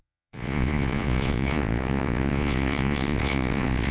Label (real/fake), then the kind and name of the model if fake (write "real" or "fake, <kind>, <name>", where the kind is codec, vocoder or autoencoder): fake, vocoder, Vocos